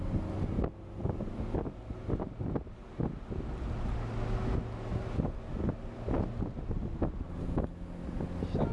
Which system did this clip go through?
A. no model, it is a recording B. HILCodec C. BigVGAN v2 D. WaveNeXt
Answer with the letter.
A